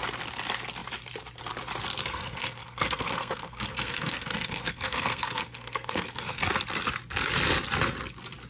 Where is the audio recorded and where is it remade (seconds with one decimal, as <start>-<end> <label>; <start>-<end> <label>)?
0.0-2.0 recorded; 2.0-6.4 remade; 6.4-8.5 recorded